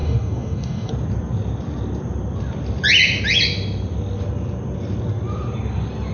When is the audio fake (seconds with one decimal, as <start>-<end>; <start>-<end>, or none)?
0.0-0.9